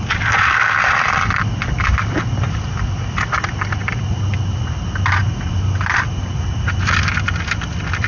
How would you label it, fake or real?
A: real